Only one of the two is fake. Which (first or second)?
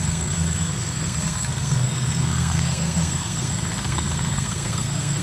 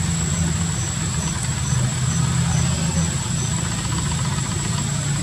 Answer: first